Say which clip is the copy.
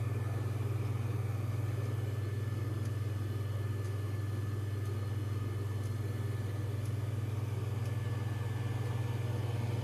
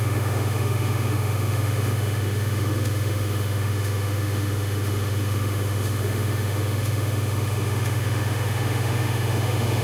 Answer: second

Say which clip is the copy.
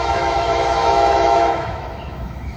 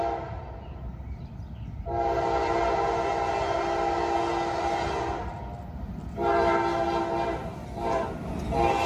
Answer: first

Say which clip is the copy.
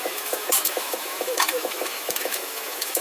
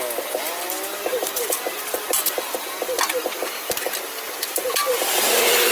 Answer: first